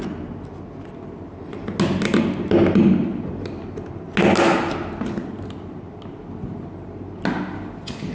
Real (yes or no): yes